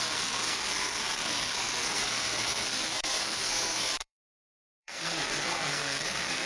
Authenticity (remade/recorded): remade